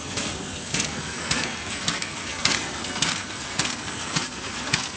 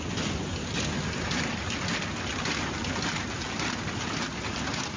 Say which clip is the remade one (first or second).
first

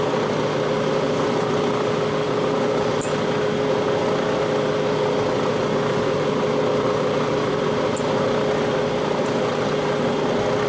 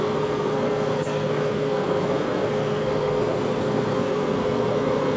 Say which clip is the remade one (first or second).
second